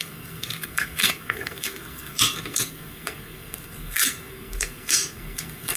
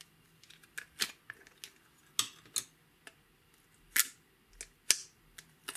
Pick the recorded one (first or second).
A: second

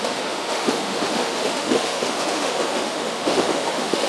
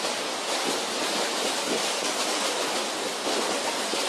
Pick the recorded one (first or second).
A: second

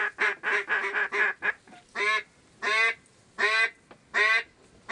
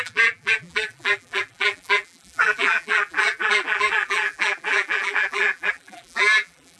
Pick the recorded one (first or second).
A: first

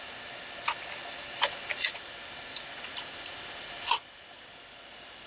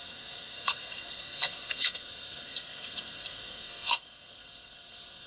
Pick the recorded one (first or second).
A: first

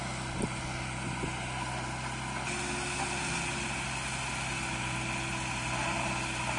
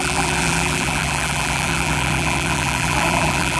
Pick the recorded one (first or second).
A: first